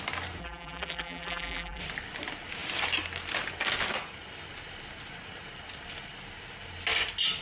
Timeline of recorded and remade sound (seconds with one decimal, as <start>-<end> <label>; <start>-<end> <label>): 0.0-0.4 recorded; 0.4-1.8 remade; 1.8-7.4 recorded